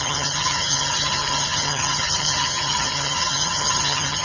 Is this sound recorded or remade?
remade